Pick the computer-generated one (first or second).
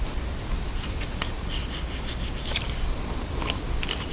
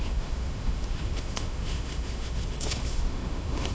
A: second